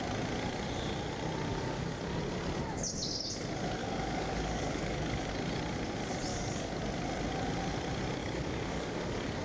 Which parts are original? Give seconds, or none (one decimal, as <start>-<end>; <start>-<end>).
0.0-1.5; 2.2-3.8; 5.3-6.3; 6.8-8.2